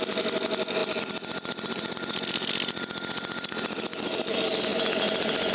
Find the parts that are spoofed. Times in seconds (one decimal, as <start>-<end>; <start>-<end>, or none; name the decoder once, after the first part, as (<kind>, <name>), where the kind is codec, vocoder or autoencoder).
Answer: none